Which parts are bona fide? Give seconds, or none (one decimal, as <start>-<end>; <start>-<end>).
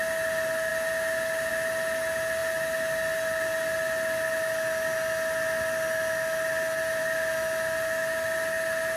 0.0-9.0